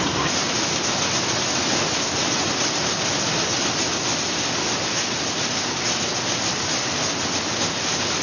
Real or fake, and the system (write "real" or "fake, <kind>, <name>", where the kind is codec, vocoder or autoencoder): real